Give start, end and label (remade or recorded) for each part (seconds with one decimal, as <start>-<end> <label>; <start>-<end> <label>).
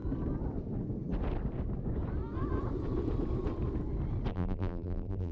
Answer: 0.0-4.3 recorded; 4.3-5.3 remade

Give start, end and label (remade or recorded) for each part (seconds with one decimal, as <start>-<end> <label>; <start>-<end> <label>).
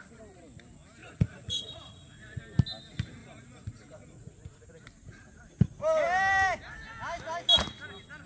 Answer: 0.0-1.0 recorded; 1.0-2.4 remade; 2.4-3.2 recorded; 3.2-4.7 remade; 4.7-8.3 recorded